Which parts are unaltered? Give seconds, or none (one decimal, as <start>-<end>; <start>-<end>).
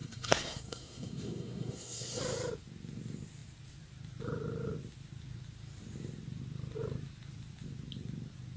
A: 2.2-8.6